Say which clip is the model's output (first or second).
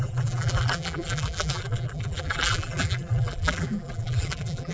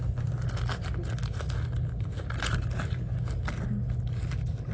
first